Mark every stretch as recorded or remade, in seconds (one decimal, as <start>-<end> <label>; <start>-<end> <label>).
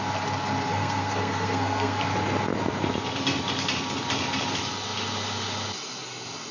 0.0-0.7 recorded; 0.7-2.0 remade; 2.0-6.5 recorded